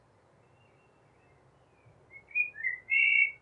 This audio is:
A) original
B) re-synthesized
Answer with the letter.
A